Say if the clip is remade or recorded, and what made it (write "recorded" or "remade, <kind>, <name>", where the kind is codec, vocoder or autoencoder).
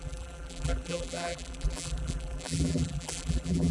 remade, vocoder, BigVGAN v2